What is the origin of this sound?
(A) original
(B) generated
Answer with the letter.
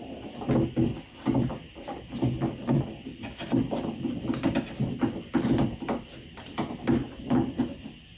A